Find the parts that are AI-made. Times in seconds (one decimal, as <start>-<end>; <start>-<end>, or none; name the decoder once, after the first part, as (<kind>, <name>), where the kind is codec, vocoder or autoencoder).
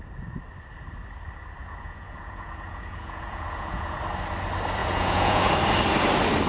1.6-4.0 (vocoder, Vocos); 4.8-5.5